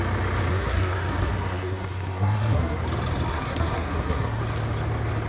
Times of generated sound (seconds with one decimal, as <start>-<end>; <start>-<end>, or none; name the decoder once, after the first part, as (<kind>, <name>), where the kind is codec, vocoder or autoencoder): 0.5-2.8 (codec, SNAC); 3.3-4.4